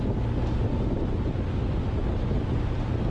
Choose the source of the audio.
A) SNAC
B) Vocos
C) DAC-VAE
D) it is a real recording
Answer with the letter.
D